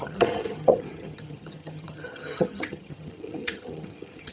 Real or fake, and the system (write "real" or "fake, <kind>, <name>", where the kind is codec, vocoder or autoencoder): fake, vocoder, HiFi-GAN